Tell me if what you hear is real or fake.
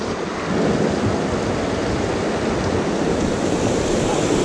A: real